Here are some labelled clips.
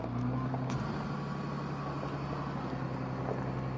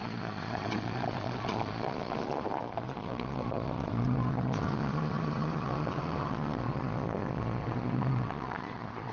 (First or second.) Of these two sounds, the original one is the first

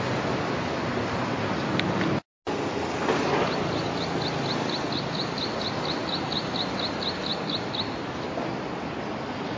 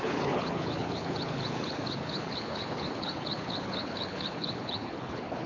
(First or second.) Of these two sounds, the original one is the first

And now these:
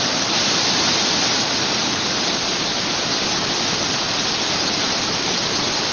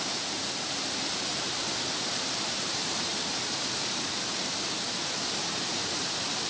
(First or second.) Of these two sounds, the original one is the first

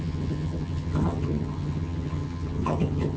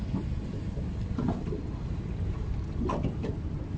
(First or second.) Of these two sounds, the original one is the second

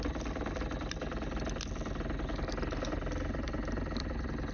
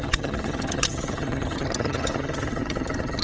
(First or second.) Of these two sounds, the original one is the first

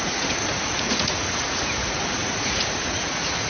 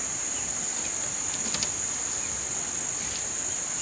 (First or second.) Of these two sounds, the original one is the second